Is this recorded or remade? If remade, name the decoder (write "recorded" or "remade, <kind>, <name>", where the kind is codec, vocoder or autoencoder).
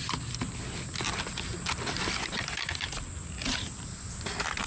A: recorded